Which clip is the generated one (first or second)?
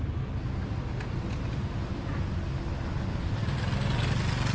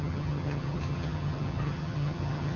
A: second